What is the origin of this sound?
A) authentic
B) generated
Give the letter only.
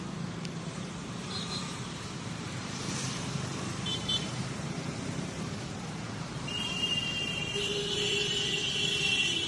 B